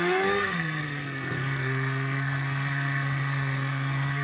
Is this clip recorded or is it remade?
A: remade